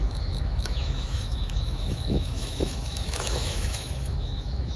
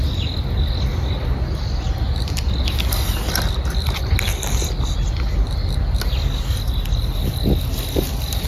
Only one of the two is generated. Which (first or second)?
first